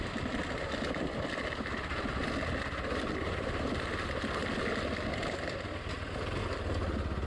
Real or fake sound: real